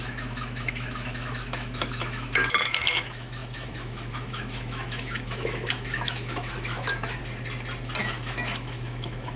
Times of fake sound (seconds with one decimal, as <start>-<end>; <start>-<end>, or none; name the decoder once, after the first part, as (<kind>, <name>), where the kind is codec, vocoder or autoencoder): 0.0-7.2 (autoencoder, DAC-VAE); 8.0-9.4